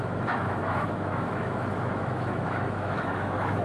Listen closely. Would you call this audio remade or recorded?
remade